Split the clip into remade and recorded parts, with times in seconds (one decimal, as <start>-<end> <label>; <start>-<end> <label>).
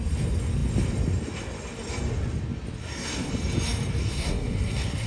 0.0-2.8 recorded; 2.8-3.3 remade; 3.3-4.0 recorded; 4.0-5.1 remade